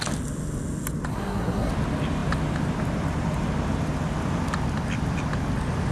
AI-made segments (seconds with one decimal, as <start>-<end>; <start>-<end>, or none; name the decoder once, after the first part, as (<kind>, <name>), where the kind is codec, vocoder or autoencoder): 1.1-1.7 (codec, SNAC)